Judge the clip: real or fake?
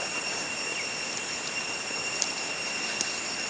real